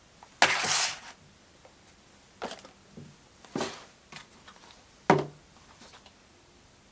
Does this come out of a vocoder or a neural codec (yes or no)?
no